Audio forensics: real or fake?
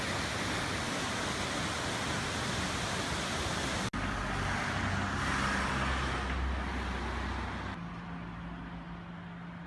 real